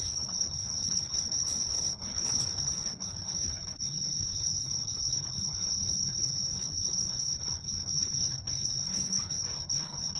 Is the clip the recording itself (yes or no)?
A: no